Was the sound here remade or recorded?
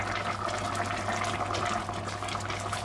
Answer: recorded